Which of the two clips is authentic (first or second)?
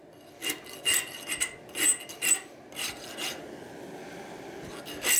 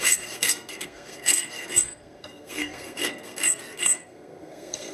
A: first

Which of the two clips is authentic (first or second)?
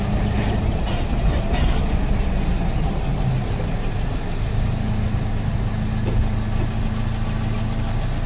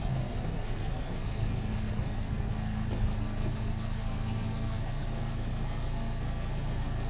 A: first